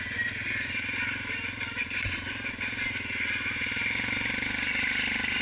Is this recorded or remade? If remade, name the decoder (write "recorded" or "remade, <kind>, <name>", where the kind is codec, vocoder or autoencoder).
recorded